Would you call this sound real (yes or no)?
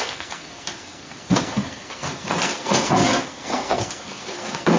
no